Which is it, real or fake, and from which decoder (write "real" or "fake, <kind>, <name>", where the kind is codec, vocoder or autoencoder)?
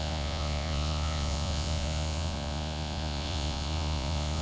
fake, vocoder, Vocos